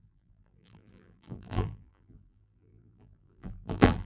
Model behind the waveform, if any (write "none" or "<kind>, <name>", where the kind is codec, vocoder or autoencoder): vocoder, BigVGAN v2